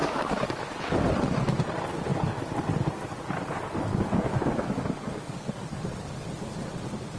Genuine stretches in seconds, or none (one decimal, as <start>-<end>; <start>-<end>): 0.6-3.9; 5.8-7.2